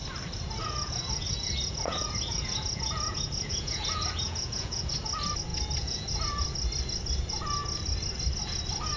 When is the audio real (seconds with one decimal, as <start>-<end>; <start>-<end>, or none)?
0.0-0.6; 4.9-5.5; 6.2-9.0